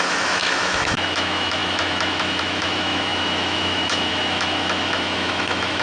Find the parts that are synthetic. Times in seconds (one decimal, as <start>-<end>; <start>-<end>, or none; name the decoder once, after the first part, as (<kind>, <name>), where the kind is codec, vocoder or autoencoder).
0.0-5.8 (autoencoder, DAC-VAE)